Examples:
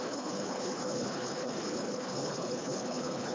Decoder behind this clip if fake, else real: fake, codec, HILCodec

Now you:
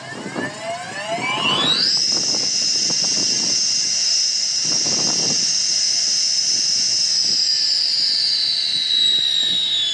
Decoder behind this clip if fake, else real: real